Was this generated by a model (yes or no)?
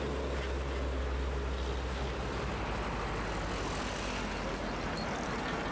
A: no